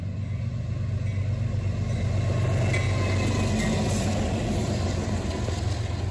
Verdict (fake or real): real